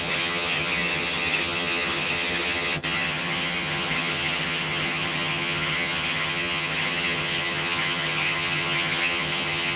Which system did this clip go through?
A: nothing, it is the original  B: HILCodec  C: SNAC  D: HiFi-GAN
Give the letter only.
D